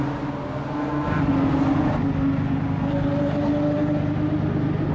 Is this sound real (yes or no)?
yes